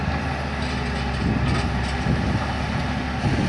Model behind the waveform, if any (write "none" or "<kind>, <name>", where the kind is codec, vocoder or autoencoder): none